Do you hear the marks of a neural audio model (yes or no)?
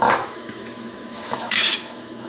yes